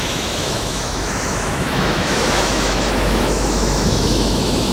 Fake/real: fake